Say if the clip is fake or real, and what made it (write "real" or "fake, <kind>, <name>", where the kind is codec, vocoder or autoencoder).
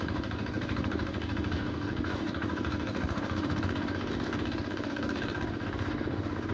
fake, codec, DAC